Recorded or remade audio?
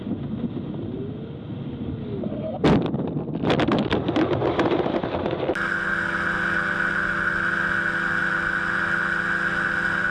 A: recorded